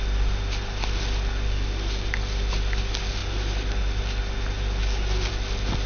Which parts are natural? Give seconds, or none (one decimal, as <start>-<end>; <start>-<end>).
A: 0.0-5.9